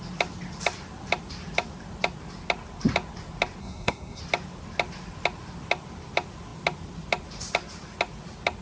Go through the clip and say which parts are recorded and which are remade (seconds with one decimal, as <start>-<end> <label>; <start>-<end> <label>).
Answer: 0.0-3.6 recorded; 3.6-4.2 remade; 4.2-8.6 recorded